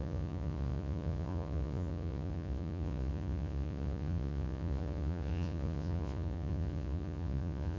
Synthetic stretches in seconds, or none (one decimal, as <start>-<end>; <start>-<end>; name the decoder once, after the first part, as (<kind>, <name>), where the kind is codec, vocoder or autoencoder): 0.0-7.8 (vocoder, Vocos)